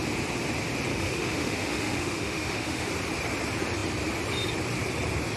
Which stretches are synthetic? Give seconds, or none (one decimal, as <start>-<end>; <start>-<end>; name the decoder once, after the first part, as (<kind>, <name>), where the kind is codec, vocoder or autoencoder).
0.9-2.9 (autoencoder, DAC-VAE)